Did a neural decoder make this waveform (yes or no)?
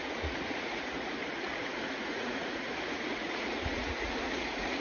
yes